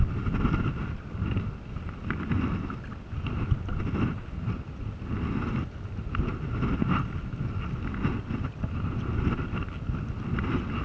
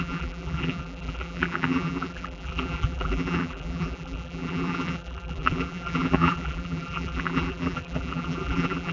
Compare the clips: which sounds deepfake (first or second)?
second